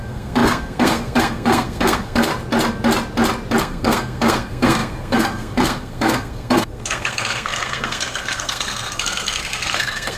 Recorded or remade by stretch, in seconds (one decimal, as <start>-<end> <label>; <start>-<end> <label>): 0.0-2.3 remade; 2.3-3.6 recorded; 3.6-10.2 remade